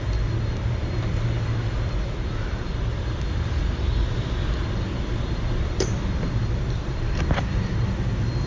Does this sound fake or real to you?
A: fake